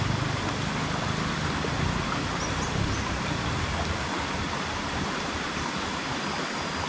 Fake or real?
real